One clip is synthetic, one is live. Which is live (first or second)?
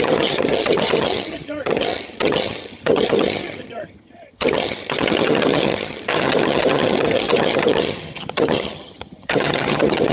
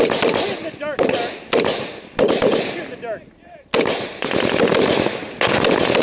second